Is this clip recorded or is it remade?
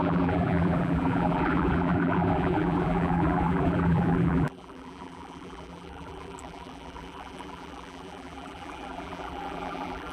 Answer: remade